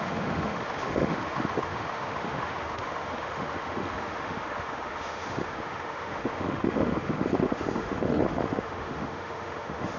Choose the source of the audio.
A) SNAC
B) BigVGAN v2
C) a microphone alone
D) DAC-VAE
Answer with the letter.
D